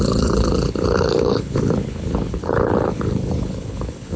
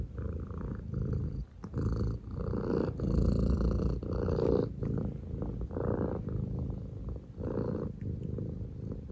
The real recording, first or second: second